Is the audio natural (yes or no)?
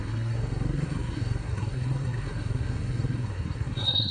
no